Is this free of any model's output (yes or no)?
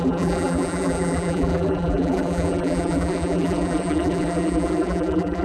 no